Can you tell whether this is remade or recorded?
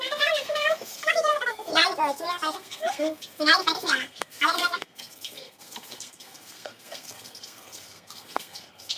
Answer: remade